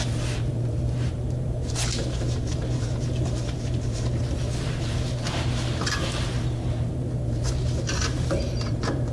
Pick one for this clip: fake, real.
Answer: fake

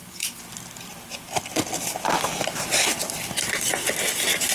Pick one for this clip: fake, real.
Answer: real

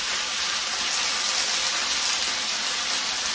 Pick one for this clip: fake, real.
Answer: real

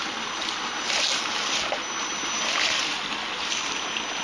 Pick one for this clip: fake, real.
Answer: real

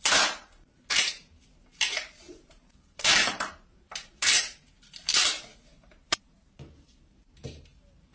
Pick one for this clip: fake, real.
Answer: fake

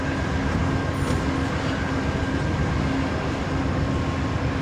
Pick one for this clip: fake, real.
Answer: real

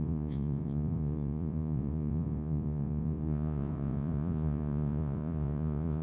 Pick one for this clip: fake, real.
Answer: fake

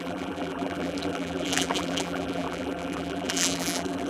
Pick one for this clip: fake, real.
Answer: fake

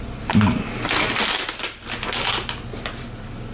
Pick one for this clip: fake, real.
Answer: real